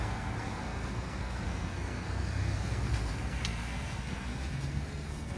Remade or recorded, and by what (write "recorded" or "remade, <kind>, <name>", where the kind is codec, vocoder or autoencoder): remade, codec, SNAC